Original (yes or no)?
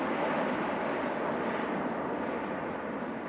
yes